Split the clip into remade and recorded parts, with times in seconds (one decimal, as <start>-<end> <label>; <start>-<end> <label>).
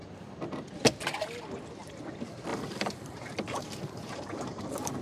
0.0-2.5 recorded; 2.5-4.6 remade; 4.6-5.0 recorded